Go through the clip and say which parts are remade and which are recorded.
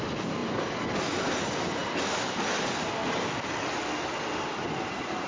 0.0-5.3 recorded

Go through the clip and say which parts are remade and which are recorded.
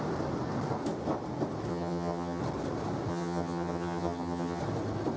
0.0-1.7 recorded; 1.7-2.4 remade; 2.4-3.1 recorded; 3.1-4.6 remade; 4.6-5.2 recorded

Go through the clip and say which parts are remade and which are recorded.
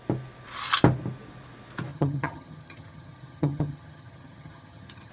0.0-1.9 recorded; 1.9-5.1 remade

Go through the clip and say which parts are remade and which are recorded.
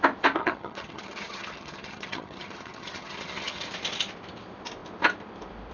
0.0-0.4 recorded; 0.4-3.7 remade; 3.7-5.7 recorded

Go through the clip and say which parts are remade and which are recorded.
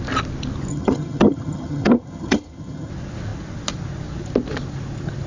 0.0-0.7 recorded; 0.7-2.9 remade; 2.9-5.3 recorded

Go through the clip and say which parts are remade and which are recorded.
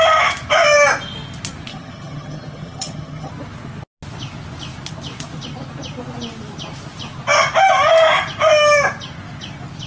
0.0-1.7 recorded; 1.7-3.3 remade; 3.3-9.9 recorded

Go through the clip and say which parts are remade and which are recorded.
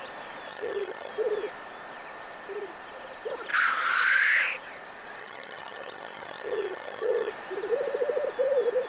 0.0-0.5 recorded; 0.5-1.1 remade; 1.1-5.2 recorded; 5.2-7.3 remade; 7.3-8.9 recorded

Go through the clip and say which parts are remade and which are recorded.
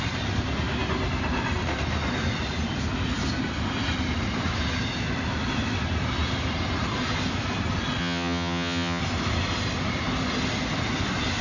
0.0-8.0 recorded; 8.0-9.0 remade; 9.0-11.4 recorded